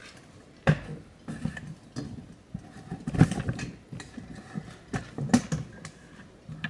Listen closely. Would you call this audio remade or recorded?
recorded